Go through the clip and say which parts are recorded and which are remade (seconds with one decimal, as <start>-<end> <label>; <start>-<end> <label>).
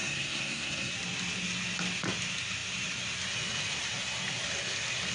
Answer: 0.0-0.9 remade; 0.9-5.1 recorded